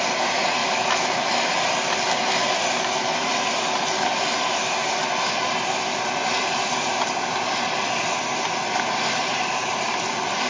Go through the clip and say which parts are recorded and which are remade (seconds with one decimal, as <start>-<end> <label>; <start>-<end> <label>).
0.0-0.6 recorded; 0.6-1.5 remade; 1.5-10.5 recorded